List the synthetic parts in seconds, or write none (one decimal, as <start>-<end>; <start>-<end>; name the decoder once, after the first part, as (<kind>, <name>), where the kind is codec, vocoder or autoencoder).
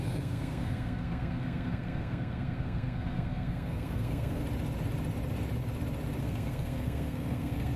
0.0-4.4 (codec, SNAC); 6.2-7.8